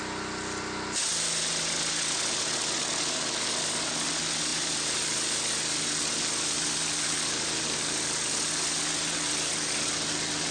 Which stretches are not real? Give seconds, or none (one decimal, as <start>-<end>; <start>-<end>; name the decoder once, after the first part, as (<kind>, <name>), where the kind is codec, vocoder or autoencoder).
none